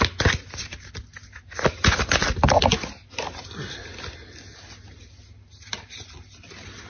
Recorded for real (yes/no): yes